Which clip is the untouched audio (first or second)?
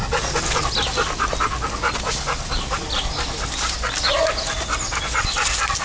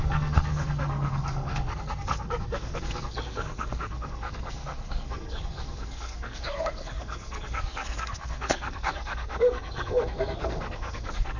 first